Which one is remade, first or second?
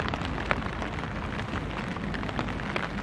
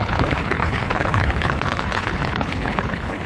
second